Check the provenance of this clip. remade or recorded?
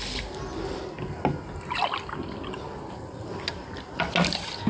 recorded